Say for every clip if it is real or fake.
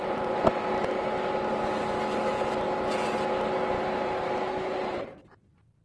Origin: real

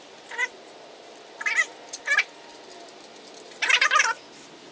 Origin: real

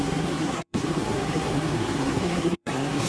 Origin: fake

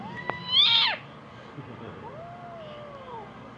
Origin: fake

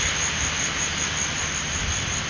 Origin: real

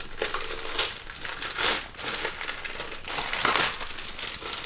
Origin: real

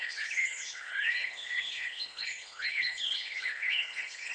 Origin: fake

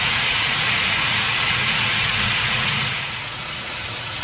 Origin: fake